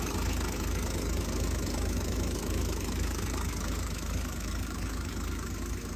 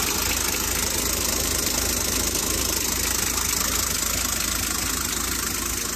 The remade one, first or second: first